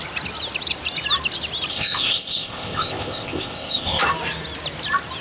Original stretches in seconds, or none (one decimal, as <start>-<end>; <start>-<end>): 0.0-1.7; 4.0-5.2